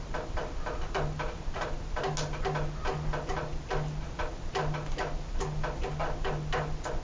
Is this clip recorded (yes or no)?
yes